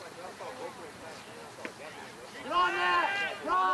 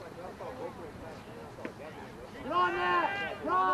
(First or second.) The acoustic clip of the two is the second